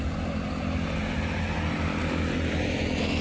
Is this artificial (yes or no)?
no